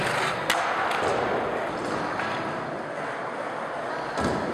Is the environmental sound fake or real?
real